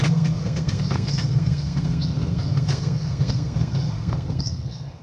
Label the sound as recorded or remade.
remade